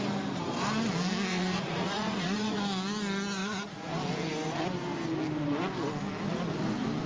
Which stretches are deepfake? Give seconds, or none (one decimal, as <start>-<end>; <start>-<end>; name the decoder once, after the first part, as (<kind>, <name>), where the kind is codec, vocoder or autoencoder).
1.3-2.6 (vocoder, Vocos); 3.4-4.0